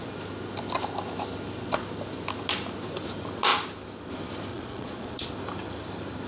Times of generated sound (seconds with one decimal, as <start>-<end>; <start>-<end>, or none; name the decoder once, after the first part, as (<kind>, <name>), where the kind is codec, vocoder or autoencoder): 4.5-5.3 (vocoder, Vocos)